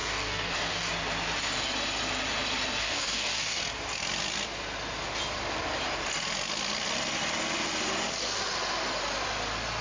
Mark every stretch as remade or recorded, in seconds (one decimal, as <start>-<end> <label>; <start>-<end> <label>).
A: 0.0-0.9 remade; 0.9-2.8 recorded; 2.8-3.6 remade; 3.6-9.8 recorded